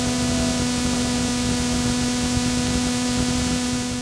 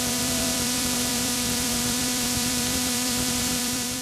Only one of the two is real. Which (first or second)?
first